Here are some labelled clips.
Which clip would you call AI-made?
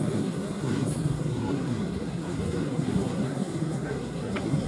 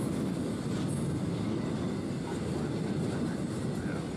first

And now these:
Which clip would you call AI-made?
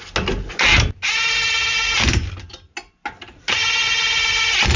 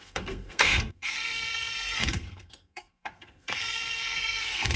second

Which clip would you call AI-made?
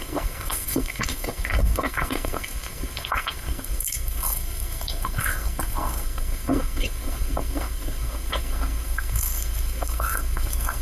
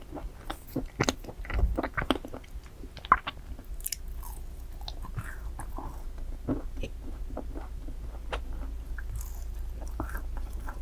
first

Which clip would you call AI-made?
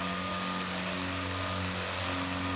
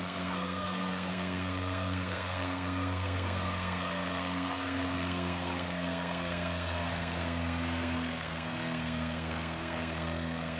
second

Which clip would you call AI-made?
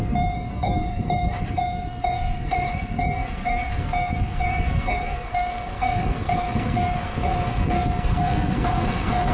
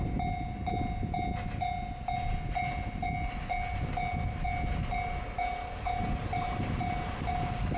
first